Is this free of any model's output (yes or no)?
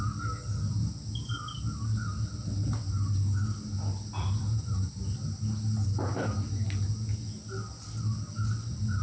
yes